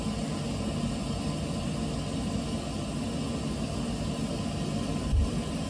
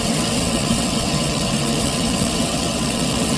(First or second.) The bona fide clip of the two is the first